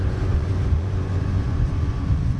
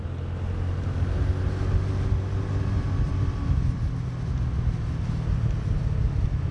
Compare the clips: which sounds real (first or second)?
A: second